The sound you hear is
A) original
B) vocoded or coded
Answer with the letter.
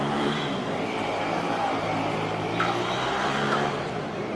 B